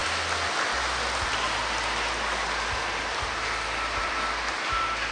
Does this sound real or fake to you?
real